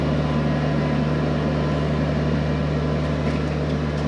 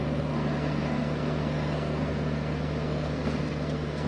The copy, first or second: second